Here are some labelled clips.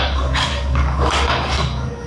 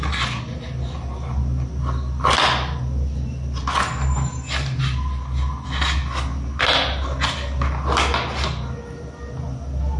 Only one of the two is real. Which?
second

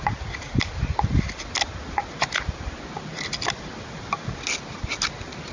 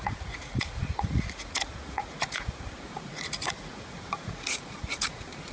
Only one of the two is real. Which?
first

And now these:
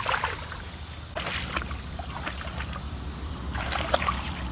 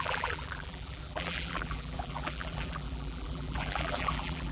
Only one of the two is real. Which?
first